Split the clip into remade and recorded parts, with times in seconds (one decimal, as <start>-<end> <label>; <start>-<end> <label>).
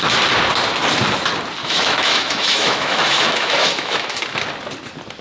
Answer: 0.0-1.6 recorded; 1.6-4.2 remade; 4.2-5.2 recorded